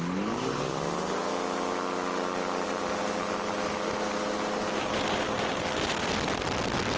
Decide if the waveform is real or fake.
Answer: real